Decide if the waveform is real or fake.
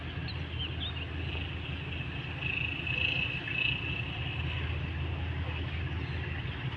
real